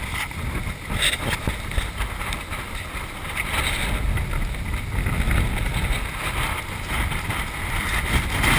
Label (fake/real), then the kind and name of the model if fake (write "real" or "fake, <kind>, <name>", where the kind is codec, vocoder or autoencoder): real